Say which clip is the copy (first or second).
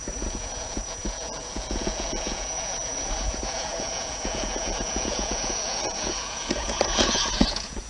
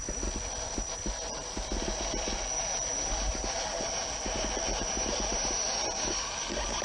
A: first